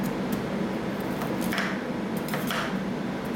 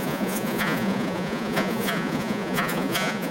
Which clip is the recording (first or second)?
first